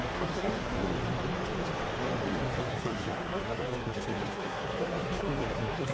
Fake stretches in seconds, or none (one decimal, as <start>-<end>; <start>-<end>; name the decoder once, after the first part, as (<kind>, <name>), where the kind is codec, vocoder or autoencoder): 0.0-0.9 (codec, SNAC); 2.3-5.9